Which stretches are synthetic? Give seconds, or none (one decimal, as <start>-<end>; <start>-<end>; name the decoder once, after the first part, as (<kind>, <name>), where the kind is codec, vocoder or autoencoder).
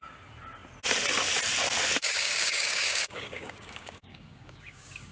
2.0-5.1 (codec, DAC)